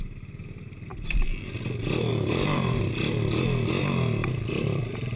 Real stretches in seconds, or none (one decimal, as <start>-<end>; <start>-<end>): 0.0-0.9; 1.5-2.1; 2.8-4.2; 4.8-5.2